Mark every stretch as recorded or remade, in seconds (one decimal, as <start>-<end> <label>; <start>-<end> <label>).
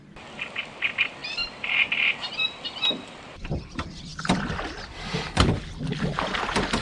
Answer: 0.0-6.8 remade